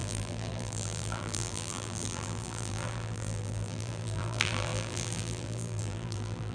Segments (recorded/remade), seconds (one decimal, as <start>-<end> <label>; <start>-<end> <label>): 0.0-6.5 remade

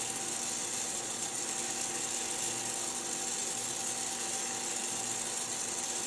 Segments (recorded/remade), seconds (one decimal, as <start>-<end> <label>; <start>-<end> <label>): 0.0-0.9 recorded; 0.9-1.4 remade; 1.4-6.1 recorded

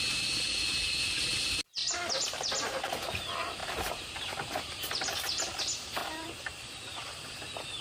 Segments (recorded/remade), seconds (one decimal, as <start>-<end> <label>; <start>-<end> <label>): 0.0-3.6 recorded; 3.6-5.6 remade; 5.6-6.0 recorded; 6.0-6.6 remade; 6.6-7.8 recorded

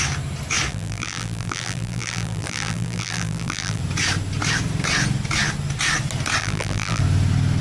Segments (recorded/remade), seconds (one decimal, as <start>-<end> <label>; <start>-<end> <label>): 0.0-0.7 recorded; 0.7-3.8 remade; 3.8-6.4 recorded; 6.4-7.0 remade; 7.0-7.6 recorded

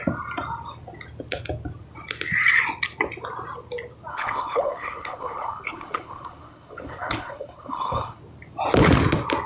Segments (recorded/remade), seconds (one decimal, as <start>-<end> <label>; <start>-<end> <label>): 0.0-4.1 recorded; 4.1-8.2 remade; 8.2-9.5 recorded

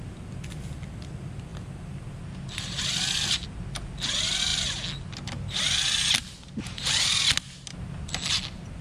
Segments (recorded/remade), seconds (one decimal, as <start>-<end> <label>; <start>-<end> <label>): 0.0-8.8 recorded

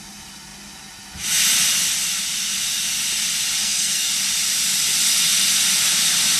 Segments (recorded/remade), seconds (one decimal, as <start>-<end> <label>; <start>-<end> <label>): 0.0-3.6 recorded; 3.6-4.1 remade; 4.1-6.4 recorded

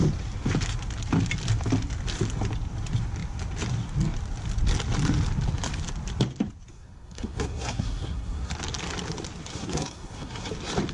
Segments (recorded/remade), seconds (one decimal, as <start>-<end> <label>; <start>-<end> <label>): 0.0-6.7 recorded; 6.7-8.5 remade; 8.5-9.5 recorded; 9.5-10.5 remade; 10.5-10.9 recorded